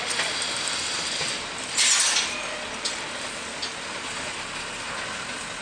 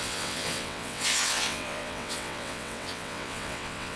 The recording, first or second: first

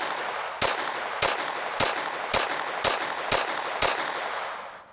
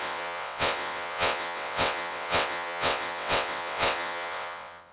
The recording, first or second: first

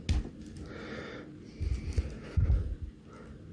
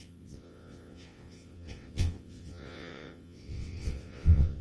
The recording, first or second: first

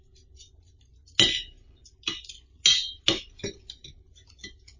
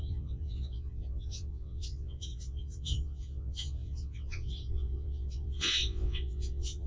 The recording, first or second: first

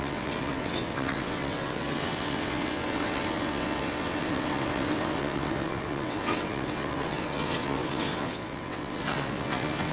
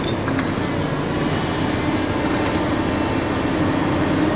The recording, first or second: second